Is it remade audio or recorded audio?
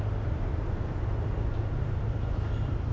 recorded